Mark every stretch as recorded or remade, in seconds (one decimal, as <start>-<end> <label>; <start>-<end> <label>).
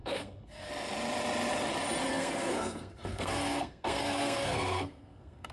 0.0-0.7 remade; 0.7-2.1 recorded; 2.1-5.5 remade